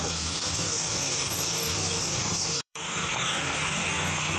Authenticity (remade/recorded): remade